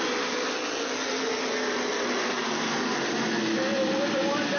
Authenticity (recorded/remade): recorded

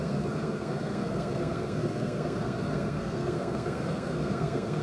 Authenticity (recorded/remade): remade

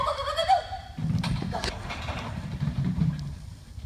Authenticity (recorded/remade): remade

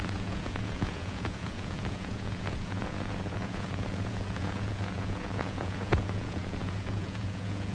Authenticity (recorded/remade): remade